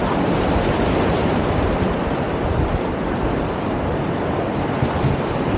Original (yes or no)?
no